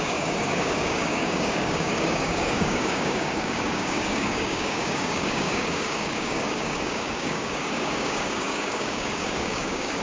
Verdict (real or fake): fake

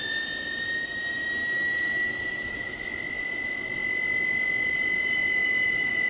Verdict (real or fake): real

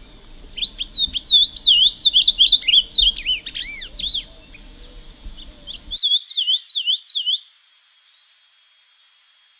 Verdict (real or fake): real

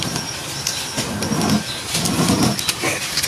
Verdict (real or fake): real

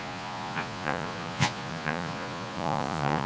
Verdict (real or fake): fake